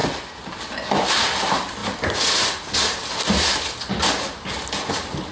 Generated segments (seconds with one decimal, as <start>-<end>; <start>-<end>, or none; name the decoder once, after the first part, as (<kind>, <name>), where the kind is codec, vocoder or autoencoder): none